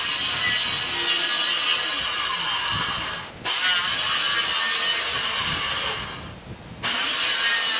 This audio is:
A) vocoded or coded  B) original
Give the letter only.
B